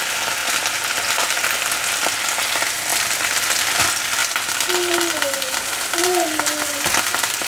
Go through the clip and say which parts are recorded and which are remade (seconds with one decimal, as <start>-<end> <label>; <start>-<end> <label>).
0.0-2.9 recorded; 2.9-3.8 remade; 3.8-7.5 recorded